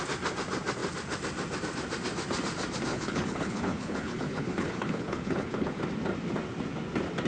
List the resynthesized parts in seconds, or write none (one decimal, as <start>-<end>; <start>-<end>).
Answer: 2.9-5.8